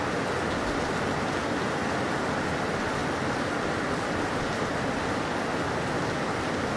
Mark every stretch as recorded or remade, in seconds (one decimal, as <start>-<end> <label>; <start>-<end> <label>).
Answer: 0.0-6.8 recorded